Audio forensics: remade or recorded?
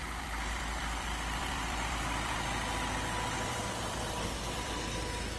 remade